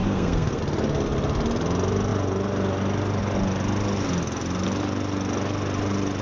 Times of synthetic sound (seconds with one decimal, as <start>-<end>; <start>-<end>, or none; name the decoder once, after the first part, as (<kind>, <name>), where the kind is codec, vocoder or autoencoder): 0.0-0.6 (codec, SNAC)